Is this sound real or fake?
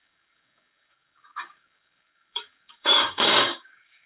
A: fake